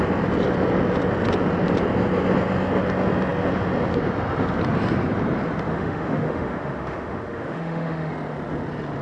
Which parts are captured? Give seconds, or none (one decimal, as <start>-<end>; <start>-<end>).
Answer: 0.0-5.7; 8.1-9.0